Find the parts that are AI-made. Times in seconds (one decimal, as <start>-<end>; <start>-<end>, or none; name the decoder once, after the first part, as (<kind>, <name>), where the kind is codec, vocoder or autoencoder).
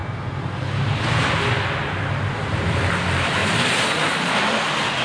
none